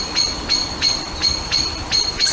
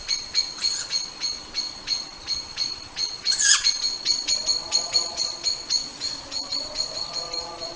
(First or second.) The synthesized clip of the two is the second